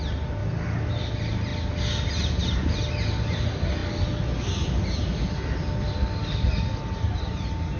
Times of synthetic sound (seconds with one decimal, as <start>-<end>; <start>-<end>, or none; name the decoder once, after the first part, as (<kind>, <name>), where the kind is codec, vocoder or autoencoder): none